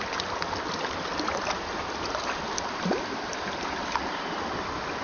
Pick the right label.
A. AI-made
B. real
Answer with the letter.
B